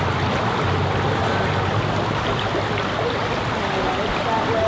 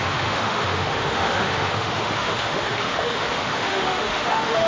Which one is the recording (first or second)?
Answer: first